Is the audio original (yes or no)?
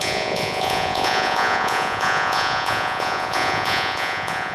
no